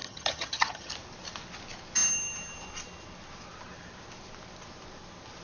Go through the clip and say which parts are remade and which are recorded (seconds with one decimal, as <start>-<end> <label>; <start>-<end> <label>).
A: 0.0-0.9 remade; 0.9-5.4 recorded